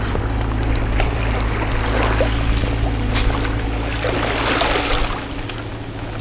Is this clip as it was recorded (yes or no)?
yes